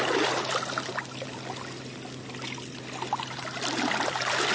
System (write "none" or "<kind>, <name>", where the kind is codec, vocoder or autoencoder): none